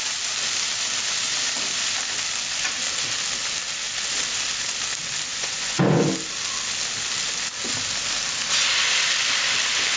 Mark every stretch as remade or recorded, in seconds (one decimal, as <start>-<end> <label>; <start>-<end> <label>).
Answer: 0.0-5.3 recorded; 5.3-6.0 remade; 6.0-10.0 recorded